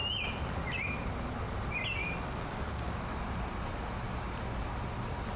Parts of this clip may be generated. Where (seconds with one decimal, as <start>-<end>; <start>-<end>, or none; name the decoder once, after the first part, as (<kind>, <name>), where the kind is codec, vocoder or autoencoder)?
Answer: none